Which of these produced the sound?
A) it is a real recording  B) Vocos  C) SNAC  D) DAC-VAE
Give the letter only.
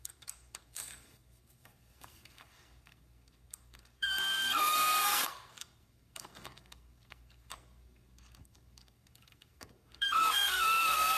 C